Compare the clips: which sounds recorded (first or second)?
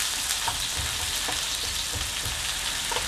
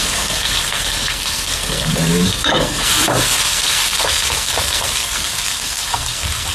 first